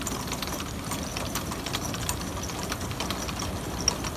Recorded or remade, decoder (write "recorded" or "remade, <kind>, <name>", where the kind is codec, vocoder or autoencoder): remade, vocoder, BigVGAN v2